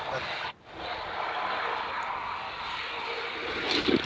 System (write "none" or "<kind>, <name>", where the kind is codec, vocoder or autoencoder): none